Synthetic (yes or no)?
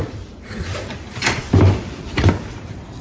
yes